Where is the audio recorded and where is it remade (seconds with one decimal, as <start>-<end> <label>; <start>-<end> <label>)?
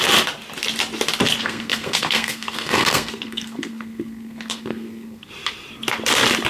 0.0-1.4 recorded; 1.4-5.3 remade; 5.3-6.5 recorded